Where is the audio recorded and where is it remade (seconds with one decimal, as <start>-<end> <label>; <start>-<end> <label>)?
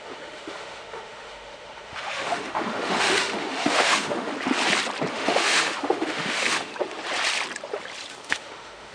0.0-4.3 remade; 4.3-5.1 recorded; 5.1-6.7 remade; 6.7-8.1 recorded; 8.1-8.9 remade